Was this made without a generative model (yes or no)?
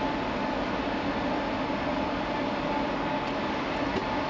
yes